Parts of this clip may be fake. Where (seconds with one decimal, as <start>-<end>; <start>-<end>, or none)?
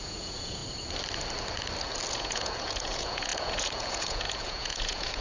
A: 0.0-0.6; 2.1-5.2